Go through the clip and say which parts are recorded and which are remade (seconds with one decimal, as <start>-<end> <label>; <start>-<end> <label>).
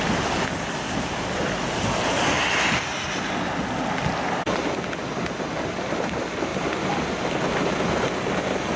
0.0-8.8 recorded